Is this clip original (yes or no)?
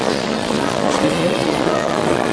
no